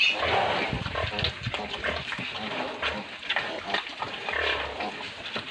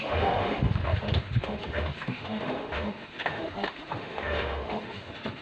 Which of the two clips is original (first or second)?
first